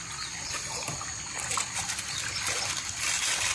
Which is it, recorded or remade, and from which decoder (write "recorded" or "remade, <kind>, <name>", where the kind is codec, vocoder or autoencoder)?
recorded